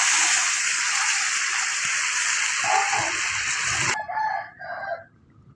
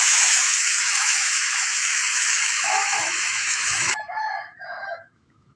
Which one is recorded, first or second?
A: first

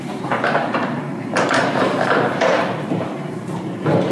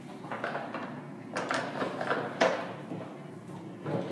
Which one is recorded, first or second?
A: second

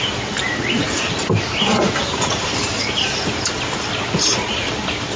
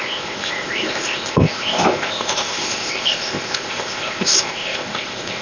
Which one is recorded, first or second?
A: first